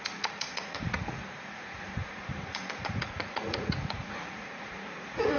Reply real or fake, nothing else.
fake